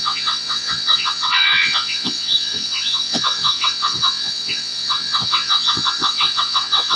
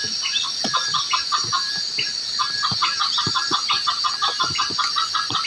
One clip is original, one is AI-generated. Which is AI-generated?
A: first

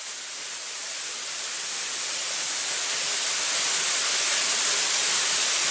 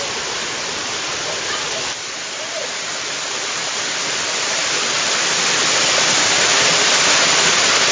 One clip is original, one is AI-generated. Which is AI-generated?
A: second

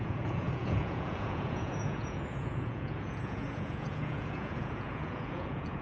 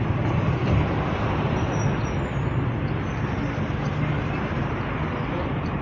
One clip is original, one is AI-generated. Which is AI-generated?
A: first